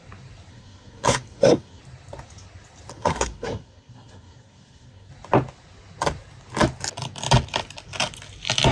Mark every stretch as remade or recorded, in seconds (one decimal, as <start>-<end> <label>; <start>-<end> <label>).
0.0-0.5 recorded; 0.5-1.8 remade; 1.8-2.9 recorded; 2.9-5.1 remade; 5.1-8.7 recorded